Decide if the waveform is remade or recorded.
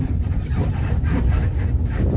recorded